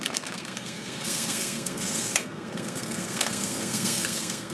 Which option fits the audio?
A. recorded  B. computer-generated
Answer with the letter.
B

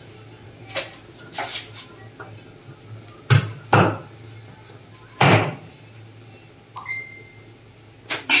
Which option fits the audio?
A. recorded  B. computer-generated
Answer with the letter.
A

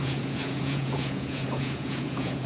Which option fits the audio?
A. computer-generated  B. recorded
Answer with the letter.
A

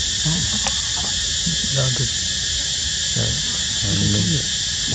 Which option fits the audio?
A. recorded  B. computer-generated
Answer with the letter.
A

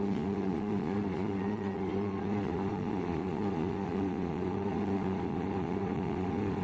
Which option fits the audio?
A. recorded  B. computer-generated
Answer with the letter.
B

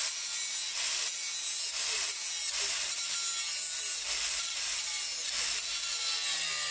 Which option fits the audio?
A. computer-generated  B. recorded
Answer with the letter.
B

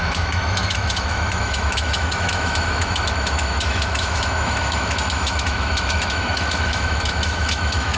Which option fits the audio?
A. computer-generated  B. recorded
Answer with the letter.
A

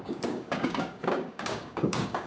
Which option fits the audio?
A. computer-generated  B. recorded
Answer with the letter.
A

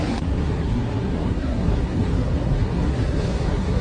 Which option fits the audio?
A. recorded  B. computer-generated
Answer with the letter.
B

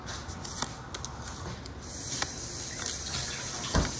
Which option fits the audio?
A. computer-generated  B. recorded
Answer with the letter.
B